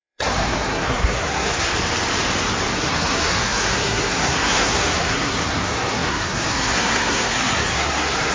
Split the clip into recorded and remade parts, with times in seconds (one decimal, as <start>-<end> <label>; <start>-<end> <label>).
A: 0.0-1.7 remade; 1.7-2.7 recorded; 2.7-8.3 remade